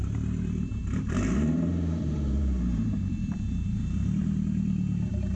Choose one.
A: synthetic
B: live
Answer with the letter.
A